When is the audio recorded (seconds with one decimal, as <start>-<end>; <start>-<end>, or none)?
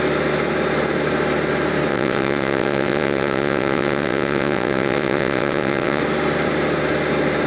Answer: 0.0-1.9; 6.0-7.5